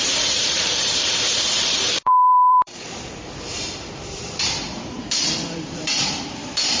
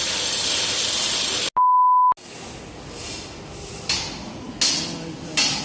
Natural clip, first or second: second